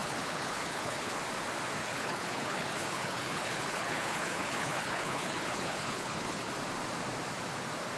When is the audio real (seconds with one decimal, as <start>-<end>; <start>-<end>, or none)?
1.2-1.8; 6.5-8.0